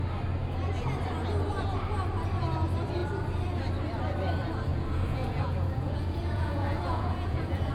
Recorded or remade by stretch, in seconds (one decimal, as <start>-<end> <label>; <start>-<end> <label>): 0.0-4.7 recorded; 4.7-7.7 remade